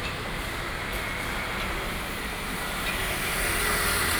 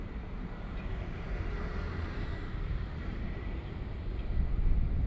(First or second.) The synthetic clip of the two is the second